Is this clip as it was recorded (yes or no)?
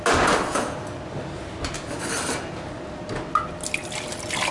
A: yes